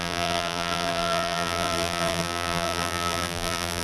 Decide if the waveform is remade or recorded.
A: remade